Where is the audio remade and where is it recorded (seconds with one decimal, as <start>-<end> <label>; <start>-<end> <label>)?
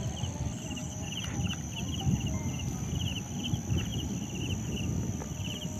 0.0-0.8 recorded; 0.8-2.9 remade; 2.9-5.8 recorded